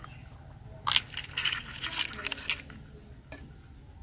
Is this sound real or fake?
real